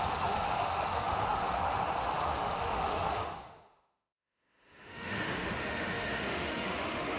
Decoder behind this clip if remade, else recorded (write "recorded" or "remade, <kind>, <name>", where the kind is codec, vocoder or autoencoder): remade, autoencoder, DAC-VAE